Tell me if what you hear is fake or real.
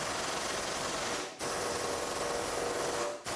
real